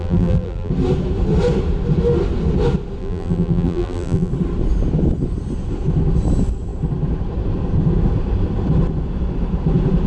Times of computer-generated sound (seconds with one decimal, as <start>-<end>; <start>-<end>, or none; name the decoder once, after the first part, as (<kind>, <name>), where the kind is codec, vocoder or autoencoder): 0.0-0.7 (vocoder, BigVGAN v2); 3.0-4.3